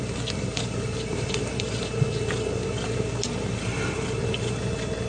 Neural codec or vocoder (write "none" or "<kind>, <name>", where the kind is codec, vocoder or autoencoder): none